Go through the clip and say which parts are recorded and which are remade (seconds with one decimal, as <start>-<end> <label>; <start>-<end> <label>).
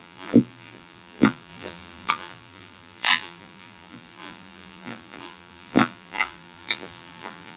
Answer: 0.0-7.6 remade